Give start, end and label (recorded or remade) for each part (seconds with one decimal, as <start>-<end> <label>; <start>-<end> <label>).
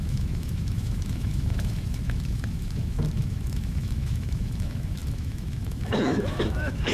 0.0-6.9 remade